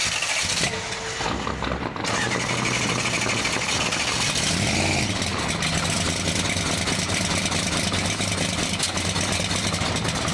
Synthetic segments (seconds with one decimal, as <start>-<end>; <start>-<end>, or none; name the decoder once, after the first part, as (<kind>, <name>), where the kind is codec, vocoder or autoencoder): none